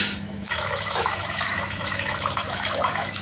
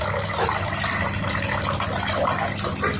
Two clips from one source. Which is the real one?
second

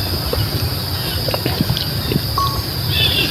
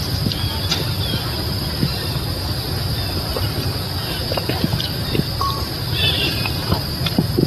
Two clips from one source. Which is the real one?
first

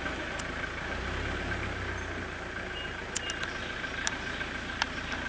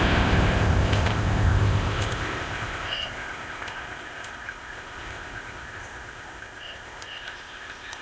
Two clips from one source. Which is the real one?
first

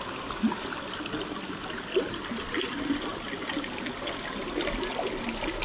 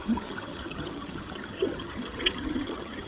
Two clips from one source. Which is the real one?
first